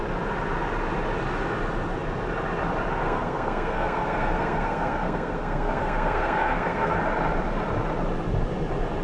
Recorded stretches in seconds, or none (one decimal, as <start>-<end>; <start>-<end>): 0.0-3.0; 7.0-9.0